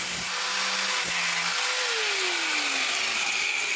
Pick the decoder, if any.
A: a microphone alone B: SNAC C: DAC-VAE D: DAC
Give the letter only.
A